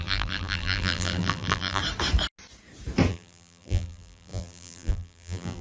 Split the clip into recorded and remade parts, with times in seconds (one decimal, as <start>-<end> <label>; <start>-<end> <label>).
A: 0.0-1.8 remade; 1.8-3.1 recorded; 3.1-5.6 remade